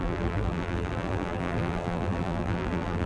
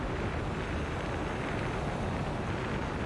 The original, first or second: second